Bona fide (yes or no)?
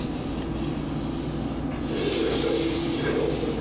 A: yes